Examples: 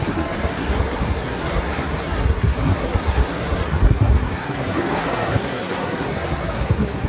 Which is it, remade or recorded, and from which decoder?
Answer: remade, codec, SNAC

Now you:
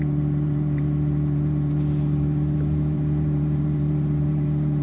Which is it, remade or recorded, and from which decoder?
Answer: remade, vocoder, BigVGAN v2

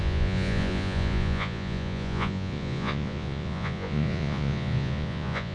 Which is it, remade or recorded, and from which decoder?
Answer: remade, vocoder, Vocos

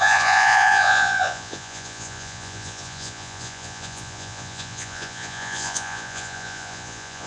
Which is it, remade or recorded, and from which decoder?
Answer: remade, vocoder, Vocos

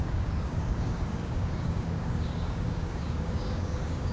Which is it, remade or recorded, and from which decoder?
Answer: remade, codec, DAC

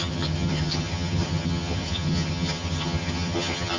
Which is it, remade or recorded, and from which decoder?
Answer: remade, vocoder, HiFi-GAN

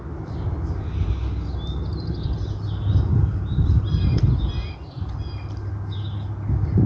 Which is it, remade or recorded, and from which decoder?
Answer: recorded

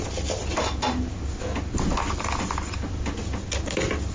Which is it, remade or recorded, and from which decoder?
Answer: recorded